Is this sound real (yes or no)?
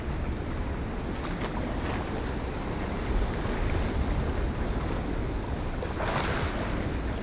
yes